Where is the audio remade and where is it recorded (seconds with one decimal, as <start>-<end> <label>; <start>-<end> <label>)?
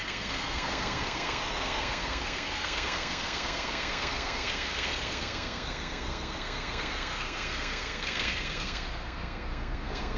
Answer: 0.0-10.2 remade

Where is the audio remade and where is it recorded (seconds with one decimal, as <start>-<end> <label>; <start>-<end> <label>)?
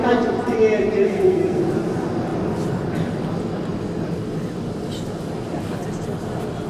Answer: 0.0-1.0 recorded; 1.0-1.6 remade; 1.6-6.7 recorded